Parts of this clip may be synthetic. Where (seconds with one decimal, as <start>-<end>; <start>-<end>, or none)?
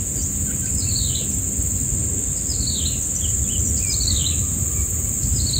none